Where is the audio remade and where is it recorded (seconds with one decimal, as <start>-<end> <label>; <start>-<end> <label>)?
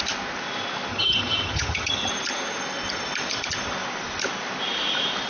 0.0-0.9 recorded; 0.9-2.1 remade; 2.1-5.3 recorded